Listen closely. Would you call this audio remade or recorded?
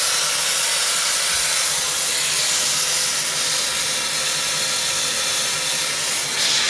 recorded